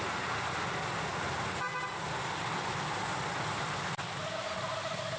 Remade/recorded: recorded